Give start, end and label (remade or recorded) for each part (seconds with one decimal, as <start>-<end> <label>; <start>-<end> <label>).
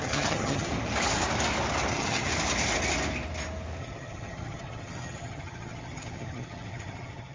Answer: 0.0-0.7 remade; 0.7-1.9 recorded; 1.9-2.3 remade; 2.3-3.8 recorded; 3.8-7.3 remade